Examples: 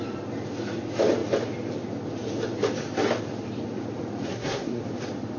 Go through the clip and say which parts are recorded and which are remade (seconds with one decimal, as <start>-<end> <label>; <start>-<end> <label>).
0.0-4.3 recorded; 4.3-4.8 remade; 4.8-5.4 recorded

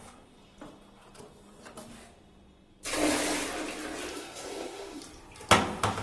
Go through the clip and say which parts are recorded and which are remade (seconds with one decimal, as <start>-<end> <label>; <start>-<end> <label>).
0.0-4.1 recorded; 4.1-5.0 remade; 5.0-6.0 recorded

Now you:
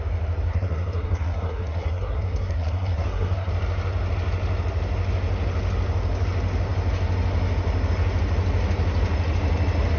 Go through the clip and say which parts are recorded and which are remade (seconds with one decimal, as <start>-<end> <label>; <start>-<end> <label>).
0.0-0.5 recorded; 0.5-3.5 remade; 3.5-10.0 recorded

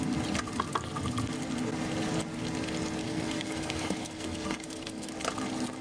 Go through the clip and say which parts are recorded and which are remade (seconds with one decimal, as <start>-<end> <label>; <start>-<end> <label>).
0.0-3.0 recorded; 3.0-5.1 remade; 5.1-5.8 recorded

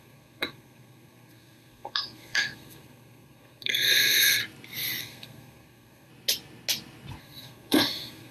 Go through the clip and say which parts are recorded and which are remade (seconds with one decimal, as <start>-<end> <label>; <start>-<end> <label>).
0.0-4.4 remade; 4.4-5.0 recorded; 5.0-6.1 remade; 6.1-7.2 recorded; 7.2-8.3 remade

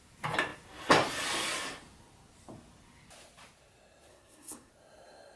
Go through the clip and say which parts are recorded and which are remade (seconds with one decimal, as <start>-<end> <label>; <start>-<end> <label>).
0.0-4.1 recorded; 4.1-4.7 remade; 4.7-5.4 recorded

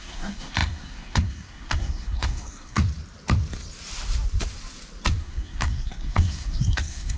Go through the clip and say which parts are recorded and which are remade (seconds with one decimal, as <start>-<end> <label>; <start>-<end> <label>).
0.0-2.8 remade; 2.8-5.2 recorded; 5.2-7.2 remade

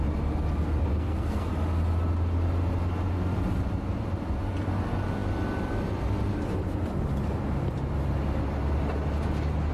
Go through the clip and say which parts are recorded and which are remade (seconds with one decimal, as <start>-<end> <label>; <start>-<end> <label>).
0.0-0.9 recorded; 0.9-1.5 remade; 1.5-9.7 recorded